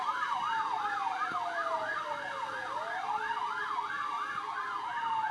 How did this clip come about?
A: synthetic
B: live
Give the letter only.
B